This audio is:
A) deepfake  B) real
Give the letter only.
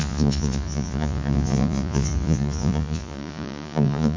A